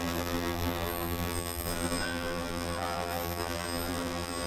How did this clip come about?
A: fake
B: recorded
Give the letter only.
A